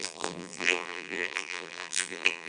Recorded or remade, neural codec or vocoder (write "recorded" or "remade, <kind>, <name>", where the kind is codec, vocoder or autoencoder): remade, vocoder, BigVGAN v2